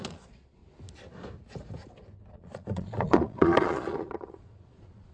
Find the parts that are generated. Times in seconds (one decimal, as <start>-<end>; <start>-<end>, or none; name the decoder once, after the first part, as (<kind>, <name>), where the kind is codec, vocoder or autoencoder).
0.0-0.6 (vocoder, Vocos); 2.3-5.1